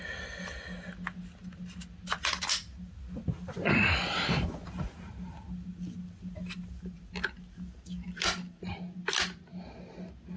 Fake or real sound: real